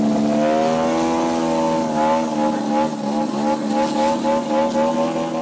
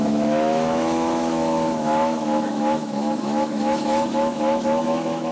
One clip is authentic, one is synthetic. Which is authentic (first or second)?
first